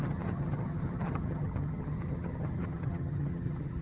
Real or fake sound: fake